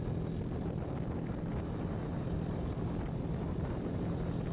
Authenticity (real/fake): real